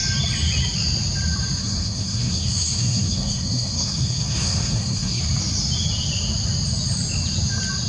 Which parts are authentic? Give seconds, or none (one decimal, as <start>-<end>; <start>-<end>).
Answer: 0.0-1.6; 5.2-7.9